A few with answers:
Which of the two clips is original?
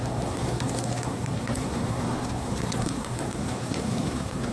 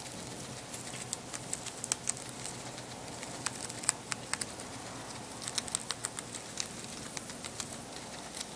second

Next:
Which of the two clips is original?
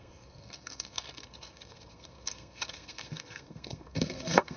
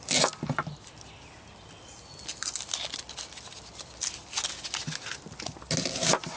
second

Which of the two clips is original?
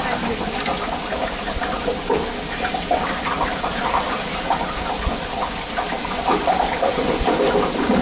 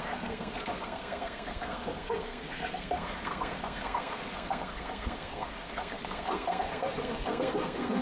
first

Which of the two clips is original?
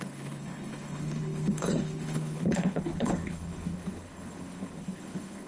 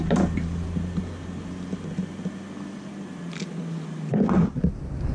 second